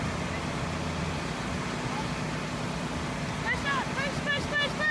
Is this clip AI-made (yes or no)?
no